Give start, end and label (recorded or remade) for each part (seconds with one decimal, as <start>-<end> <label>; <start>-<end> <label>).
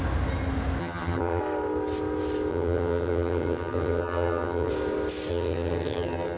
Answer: 0.0-0.8 recorded; 0.8-1.4 remade; 1.4-2.5 recorded; 2.5-4.7 remade; 4.7-5.3 recorded; 5.3-6.4 remade